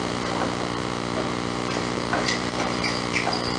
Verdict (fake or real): fake